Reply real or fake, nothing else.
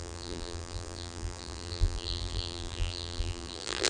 fake